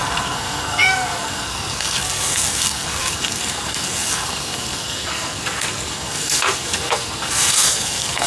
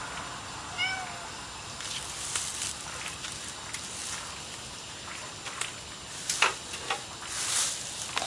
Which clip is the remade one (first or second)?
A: first